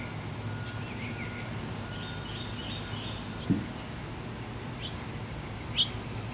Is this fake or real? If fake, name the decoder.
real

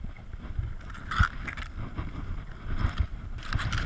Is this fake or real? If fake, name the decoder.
real